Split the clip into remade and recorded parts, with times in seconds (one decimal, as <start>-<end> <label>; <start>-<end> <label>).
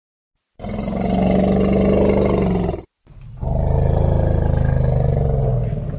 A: 0.0-6.0 recorded